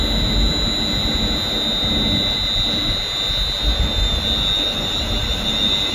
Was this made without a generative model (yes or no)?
yes